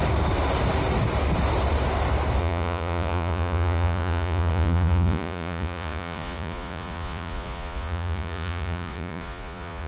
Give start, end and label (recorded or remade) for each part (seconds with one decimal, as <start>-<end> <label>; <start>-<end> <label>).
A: 0.0-2.4 recorded; 2.4-9.9 remade